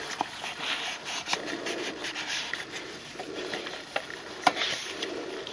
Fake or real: fake